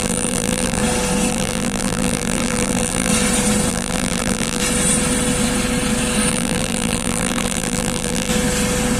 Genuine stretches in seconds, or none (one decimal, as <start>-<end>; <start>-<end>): 0.8-1.3; 3.1-3.7; 4.6-6.3; 8.3-9.0

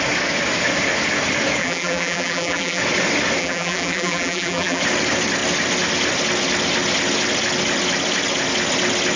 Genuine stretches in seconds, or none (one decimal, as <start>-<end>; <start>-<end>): 0.0-1.6; 2.8-3.4; 4.8-9.2

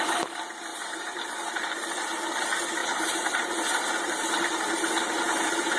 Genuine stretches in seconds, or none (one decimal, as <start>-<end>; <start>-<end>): 0.0-0.7; 1.5-2.8

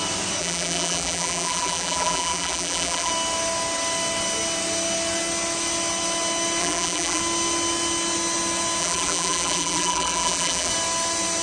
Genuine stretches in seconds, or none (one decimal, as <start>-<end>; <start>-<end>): 0.0-0.4; 3.1-6.6; 7.2-8.8; 10.7-11.4

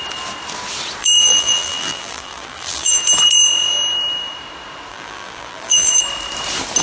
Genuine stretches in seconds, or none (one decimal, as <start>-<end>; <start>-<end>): 0.0-1.0; 3.0-4.9; 5.9-6.8